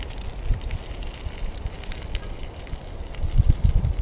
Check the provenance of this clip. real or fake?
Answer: real